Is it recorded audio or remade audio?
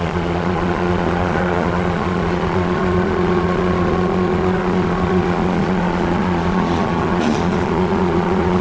remade